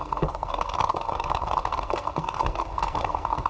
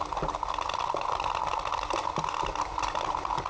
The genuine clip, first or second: second